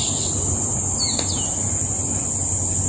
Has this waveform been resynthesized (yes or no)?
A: no